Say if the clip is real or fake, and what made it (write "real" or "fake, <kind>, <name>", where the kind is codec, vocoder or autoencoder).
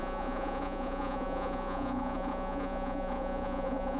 fake, vocoder, Vocos